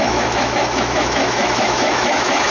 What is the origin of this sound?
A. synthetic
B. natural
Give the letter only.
A